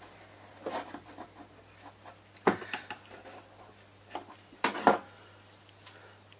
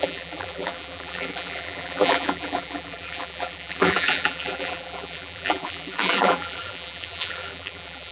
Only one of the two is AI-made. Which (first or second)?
second